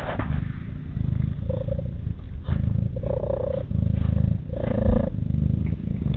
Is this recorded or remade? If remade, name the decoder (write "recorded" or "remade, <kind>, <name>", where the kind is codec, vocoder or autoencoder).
recorded